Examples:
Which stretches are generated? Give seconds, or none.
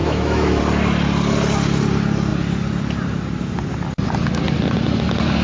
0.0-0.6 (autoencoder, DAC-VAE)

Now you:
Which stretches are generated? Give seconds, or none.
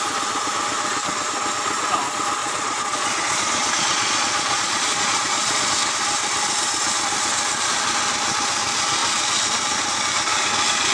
2.4-5.7 (vocoder, Vocos)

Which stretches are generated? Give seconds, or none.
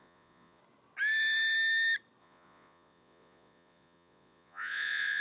0.0-0.6 (vocoder, Vocos); 2.2-5.2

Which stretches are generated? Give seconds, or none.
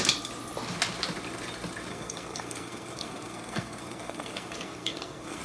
1.9-5.4 (codec, SNAC)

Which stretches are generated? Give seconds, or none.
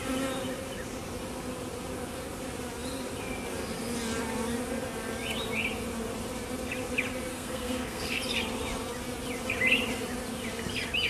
7.3-8.2 (codec, SNAC)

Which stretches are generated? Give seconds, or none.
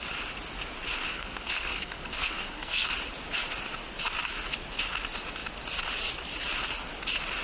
1.1-2.9 (codec, SNAC)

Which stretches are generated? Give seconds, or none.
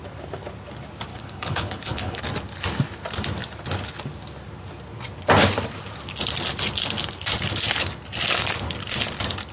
1.1-2.2 (codec, HILCodec)